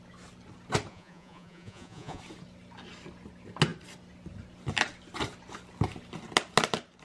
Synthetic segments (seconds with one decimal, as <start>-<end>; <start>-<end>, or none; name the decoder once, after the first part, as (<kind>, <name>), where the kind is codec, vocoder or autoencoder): 0.9-2.2 (vocoder, Vocos)